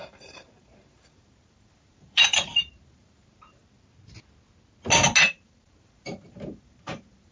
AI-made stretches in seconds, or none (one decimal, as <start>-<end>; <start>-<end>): 0.0-3.6; 5.3-7.3